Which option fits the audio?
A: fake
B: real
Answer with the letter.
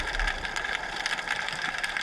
B